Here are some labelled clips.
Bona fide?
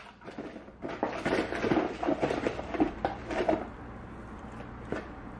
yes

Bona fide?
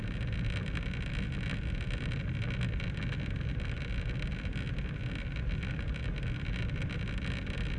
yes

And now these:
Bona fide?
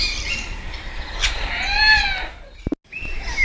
yes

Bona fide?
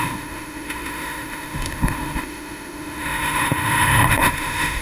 no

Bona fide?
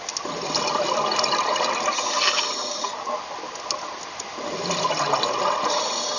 yes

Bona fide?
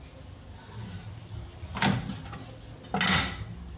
yes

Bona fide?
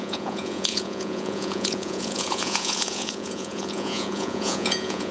no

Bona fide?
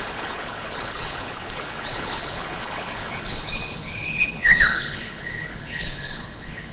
no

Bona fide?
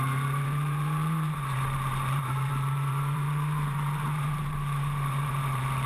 no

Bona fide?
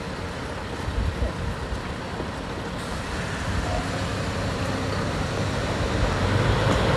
yes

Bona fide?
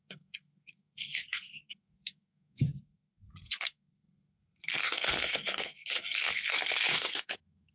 no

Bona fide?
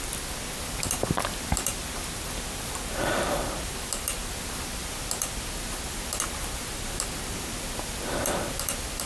no